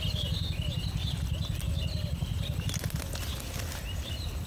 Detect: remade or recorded recorded